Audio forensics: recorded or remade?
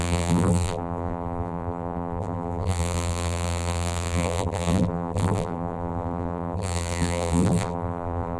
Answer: remade